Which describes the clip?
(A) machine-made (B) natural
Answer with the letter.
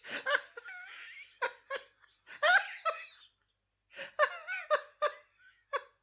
B